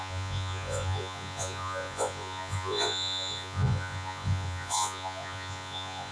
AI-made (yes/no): yes